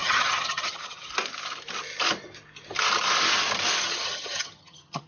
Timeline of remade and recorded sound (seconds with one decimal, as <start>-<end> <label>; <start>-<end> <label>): 0.0-1.1 remade; 1.1-3.8 recorded; 3.8-5.1 remade

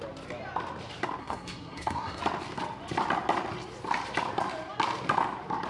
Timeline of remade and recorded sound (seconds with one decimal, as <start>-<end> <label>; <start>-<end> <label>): 0.0-1.2 recorded; 1.2-2.2 remade; 2.2-5.7 recorded

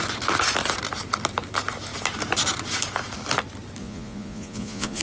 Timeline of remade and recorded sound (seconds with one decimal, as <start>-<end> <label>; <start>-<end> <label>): 0.0-3.8 recorded; 3.8-5.0 remade

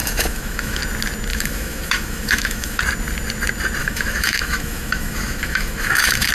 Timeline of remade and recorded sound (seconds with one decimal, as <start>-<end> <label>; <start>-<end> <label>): 0.0-0.8 remade; 0.8-1.3 recorded; 1.3-2.8 remade; 2.8-3.8 recorded; 3.8-6.3 remade

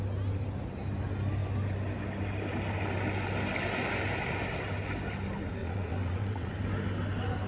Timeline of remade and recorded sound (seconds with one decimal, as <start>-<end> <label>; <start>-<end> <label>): 0.0-5.6 recorded; 5.6-6.5 remade; 6.5-7.5 recorded

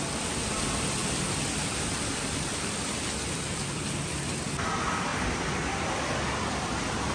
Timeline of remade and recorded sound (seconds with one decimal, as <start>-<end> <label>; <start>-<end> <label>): 0.0-7.1 recorded

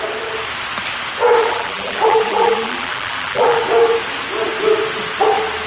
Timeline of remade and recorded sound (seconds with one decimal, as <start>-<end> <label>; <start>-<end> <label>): 0.0-1.4 recorded; 1.4-3.6 remade; 3.6-5.7 recorded

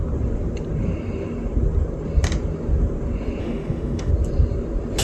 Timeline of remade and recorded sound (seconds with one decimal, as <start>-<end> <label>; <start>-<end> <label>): 0.0-3.4 recorded; 3.4-4.1 remade; 4.1-5.0 recorded